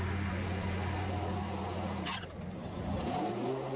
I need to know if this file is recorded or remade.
recorded